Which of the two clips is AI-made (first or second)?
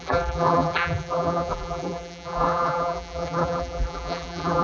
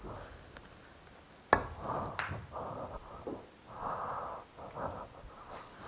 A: first